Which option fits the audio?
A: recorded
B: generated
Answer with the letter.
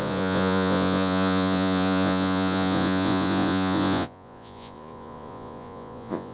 B